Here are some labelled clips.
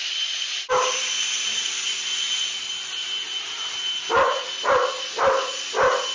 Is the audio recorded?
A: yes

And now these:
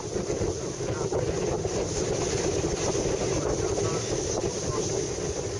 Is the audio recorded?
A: yes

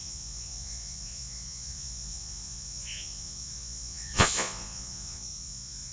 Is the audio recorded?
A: no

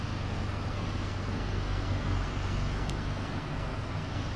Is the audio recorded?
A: no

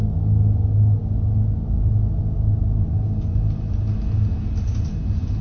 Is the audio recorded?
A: yes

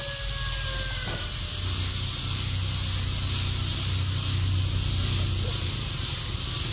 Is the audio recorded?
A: yes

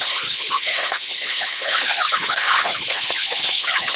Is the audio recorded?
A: no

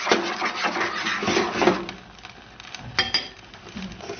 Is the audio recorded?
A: yes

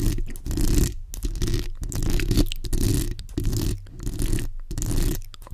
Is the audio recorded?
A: yes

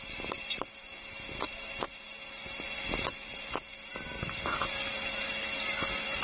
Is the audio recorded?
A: yes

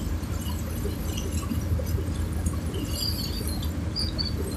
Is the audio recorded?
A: yes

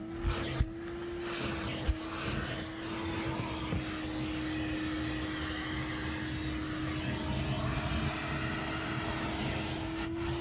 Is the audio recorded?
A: yes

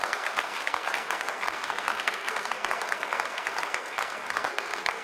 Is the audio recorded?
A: no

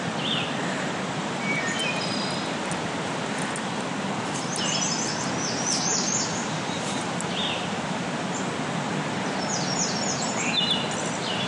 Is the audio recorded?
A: yes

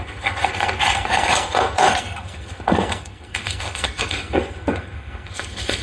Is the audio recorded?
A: no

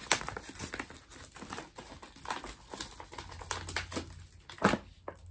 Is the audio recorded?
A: yes